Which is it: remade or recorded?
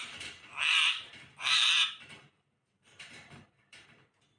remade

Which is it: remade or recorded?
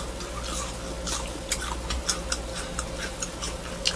recorded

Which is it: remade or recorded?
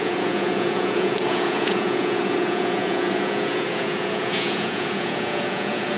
remade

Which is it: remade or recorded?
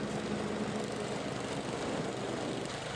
recorded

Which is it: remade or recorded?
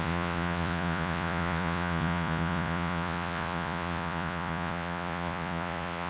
remade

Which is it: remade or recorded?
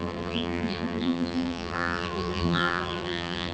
remade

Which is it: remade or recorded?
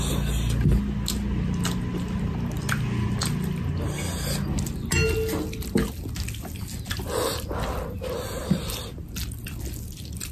recorded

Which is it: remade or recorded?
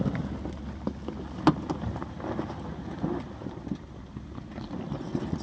recorded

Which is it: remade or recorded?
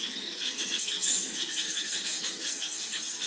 remade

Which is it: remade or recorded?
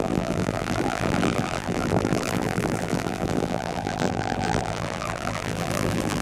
remade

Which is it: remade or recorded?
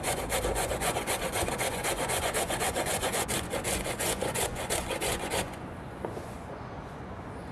remade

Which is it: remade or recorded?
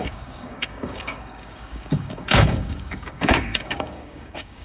remade